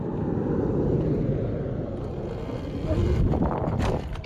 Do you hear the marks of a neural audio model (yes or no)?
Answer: yes